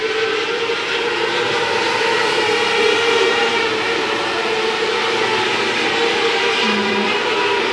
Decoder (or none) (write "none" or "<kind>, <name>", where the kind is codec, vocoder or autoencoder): vocoder, BigVGAN v2